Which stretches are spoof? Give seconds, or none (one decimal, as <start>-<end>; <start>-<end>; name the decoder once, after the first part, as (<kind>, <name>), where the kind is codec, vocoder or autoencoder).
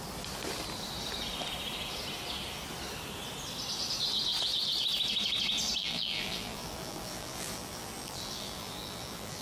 5.8-9.4 (vocoder, BigVGAN v2)